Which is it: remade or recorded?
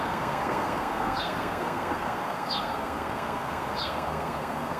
remade